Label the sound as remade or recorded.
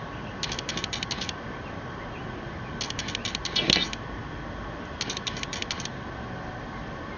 recorded